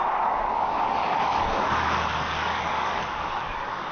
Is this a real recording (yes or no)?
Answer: no